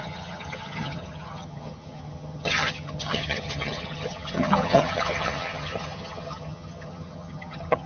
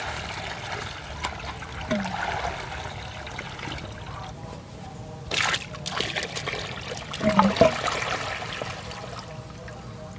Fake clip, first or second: first